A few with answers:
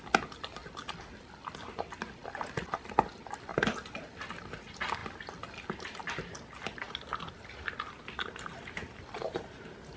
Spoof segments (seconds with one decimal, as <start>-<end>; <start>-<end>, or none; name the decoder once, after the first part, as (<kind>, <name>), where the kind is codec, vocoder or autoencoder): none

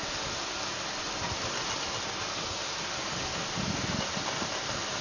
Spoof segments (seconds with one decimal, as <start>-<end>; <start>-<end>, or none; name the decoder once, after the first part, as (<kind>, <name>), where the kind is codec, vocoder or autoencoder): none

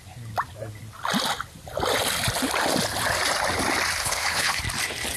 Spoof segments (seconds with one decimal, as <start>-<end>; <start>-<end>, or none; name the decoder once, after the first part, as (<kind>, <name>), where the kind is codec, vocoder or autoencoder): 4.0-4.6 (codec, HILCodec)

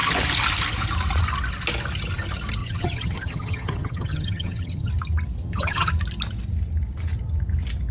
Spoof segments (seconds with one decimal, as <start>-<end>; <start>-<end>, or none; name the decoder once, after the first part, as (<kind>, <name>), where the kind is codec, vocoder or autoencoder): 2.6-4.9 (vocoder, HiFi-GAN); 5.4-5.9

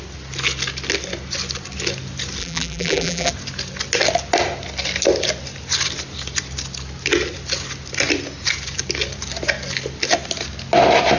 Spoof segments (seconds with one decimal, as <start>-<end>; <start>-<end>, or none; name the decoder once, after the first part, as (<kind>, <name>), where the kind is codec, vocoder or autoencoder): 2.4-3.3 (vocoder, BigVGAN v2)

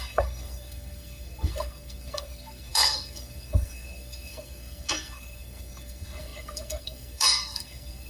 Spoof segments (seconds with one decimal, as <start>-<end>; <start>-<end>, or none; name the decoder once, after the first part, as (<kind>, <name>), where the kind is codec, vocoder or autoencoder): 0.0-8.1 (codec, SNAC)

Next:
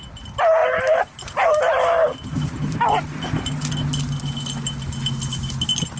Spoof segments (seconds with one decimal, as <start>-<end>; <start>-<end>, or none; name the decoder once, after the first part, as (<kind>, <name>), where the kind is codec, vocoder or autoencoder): 0.6-3.7 (vocoder, BigVGAN v2)